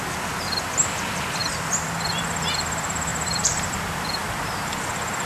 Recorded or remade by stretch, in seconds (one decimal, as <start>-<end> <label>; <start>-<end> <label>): 0.0-5.3 remade